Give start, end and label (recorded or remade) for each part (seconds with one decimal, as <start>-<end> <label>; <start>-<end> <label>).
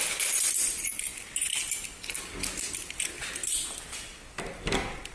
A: 0.0-5.1 recorded